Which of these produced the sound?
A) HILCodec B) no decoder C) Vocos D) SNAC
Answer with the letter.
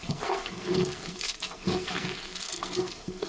D